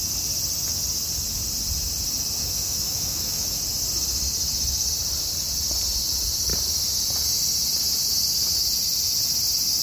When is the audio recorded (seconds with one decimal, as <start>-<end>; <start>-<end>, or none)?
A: 0.0-2.4; 3.6-9.8